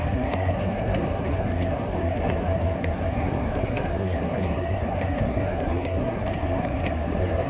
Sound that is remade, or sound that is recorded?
remade